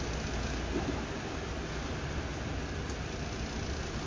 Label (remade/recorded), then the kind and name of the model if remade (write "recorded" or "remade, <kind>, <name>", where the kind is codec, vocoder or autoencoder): recorded